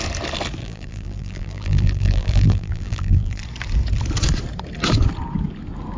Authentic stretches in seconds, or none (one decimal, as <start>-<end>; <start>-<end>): 0.0-0.6; 3.4-6.0